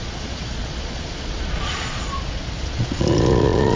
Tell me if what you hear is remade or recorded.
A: remade